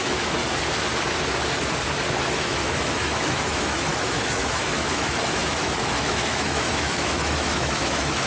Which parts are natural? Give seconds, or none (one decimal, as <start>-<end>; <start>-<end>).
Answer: 0.4-2.3